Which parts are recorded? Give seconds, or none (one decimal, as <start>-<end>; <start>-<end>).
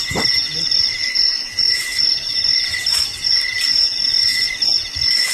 0.0-5.3